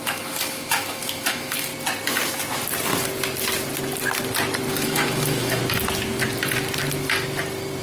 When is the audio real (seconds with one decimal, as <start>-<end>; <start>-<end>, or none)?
1.7-4.7; 5.6-7.8